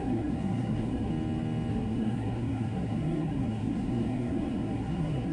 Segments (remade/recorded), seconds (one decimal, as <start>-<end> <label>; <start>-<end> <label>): 0.0-1.1 remade; 1.1-1.7 recorded; 1.7-5.3 remade